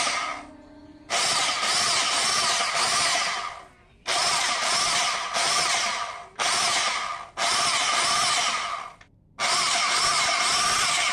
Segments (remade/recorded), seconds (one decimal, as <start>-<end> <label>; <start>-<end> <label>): 0.0-4.2 recorded; 4.2-5.0 remade; 5.0-11.1 recorded